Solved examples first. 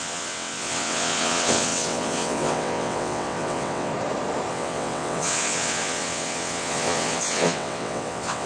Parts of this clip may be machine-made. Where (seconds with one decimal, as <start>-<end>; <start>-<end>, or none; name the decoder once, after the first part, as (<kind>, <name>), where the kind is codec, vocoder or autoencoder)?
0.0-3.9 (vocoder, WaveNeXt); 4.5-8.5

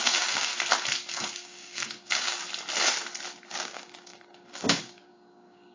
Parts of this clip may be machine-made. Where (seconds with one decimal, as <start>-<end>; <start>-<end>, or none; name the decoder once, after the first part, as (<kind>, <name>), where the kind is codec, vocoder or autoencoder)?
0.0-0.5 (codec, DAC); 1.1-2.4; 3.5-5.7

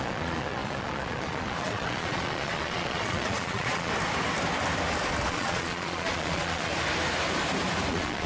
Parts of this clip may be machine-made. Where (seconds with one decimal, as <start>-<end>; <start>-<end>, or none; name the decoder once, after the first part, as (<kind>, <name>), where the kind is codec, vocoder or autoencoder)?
0.0-3.9 (vocoder, Vocos); 5.3-6.7; 7.9-8.3